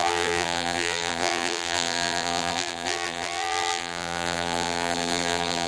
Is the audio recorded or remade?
remade